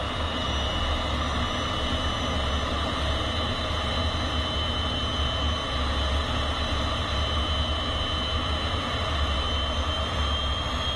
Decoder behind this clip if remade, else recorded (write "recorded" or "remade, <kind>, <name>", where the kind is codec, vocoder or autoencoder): recorded